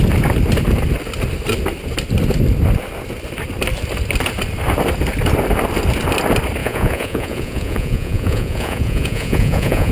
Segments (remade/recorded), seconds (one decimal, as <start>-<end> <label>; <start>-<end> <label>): 0.0-6.6 recorded; 6.6-9.9 remade